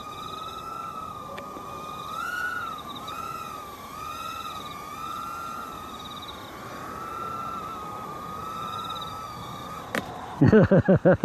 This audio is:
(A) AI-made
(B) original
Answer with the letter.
A